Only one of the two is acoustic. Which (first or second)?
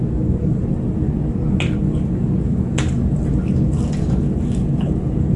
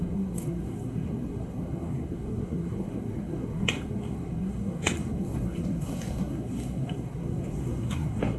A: first